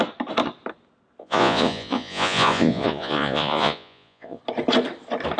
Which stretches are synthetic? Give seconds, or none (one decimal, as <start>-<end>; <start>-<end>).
1.2-4.4